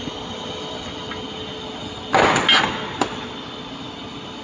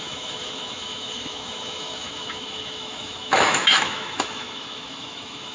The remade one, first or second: second